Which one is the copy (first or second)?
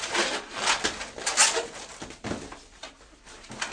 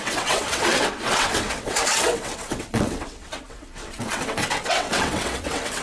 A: second